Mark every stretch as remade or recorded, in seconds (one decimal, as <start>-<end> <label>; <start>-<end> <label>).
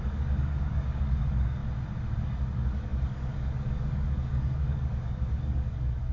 0.0-1.6 remade; 1.6-2.2 recorded; 2.2-6.1 remade